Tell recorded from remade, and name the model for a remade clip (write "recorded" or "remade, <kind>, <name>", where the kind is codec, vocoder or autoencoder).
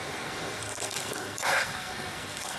remade, codec, SNAC